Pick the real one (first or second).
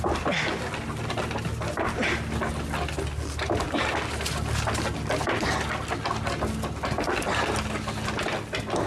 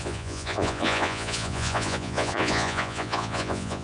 first